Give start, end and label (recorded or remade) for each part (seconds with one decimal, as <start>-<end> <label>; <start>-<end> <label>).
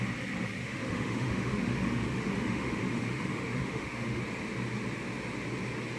0.0-0.6 recorded; 0.6-4.2 remade; 4.2-6.0 recorded